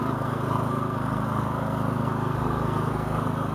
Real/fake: fake